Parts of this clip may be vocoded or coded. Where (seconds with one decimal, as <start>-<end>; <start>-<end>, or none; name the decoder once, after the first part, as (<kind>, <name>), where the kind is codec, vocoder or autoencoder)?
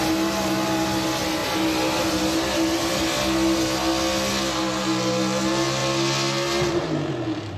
none